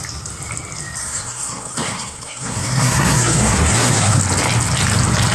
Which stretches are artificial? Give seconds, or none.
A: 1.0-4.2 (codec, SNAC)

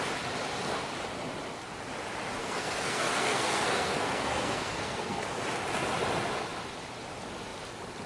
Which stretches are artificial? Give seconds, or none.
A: 2.4-5.2 (codec, SNAC)

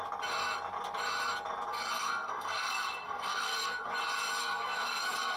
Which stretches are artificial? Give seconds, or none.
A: 1.7-3.9 (codec, SNAC); 4.4-5.4